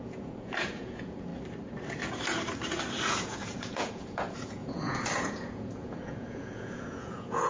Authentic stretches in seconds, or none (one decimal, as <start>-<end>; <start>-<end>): 1.3-3.2